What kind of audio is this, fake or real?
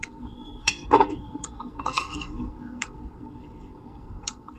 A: fake